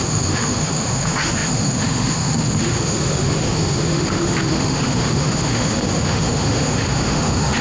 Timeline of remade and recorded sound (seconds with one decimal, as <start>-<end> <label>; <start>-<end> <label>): 0.0-7.6 remade